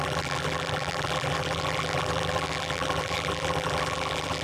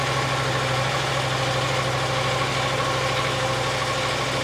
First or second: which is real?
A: second